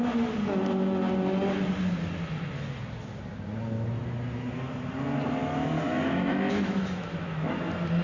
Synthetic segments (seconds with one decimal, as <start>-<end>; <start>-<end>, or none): 5.4-7.5